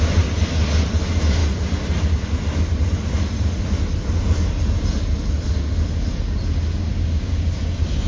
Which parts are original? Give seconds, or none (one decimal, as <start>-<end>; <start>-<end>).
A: 0.0-6.9; 7.6-8.1